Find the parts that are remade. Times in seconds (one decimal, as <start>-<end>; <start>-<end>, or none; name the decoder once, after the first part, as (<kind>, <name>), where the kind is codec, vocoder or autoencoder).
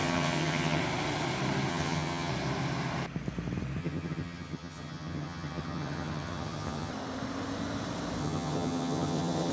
0.0-0.8 (vocoder, HiFi-GAN); 1.7-2.3; 3.8-6.9; 8.2-9.5